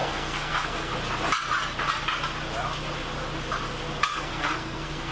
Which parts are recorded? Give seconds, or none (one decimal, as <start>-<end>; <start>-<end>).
0.9-4.0